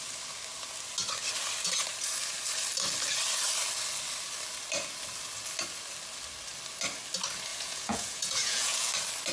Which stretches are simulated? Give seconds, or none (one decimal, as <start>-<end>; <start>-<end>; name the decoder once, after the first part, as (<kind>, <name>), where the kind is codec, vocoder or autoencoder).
7.5-8.9 (vocoder, Vocos)